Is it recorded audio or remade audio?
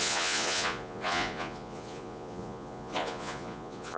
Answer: remade